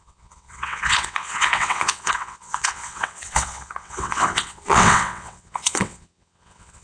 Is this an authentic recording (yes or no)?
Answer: no